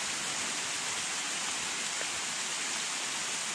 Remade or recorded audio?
recorded